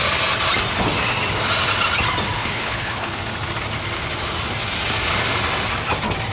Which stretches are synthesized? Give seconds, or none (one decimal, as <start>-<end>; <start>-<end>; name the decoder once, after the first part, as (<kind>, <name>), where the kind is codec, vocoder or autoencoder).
2.4-3.2 (codec, HILCodec)